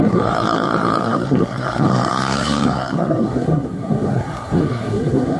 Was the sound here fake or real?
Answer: fake